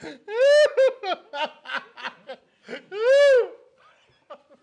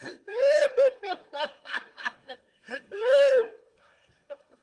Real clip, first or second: first